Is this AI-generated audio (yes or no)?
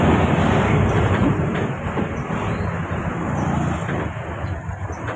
no